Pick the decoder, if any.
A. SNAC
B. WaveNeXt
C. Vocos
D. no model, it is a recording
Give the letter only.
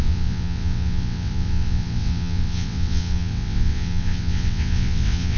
B